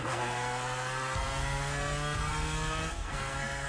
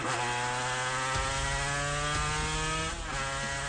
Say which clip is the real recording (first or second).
second